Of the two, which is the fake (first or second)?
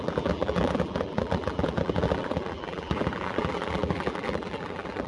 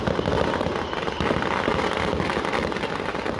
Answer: first